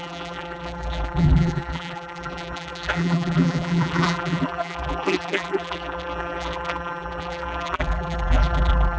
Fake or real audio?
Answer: fake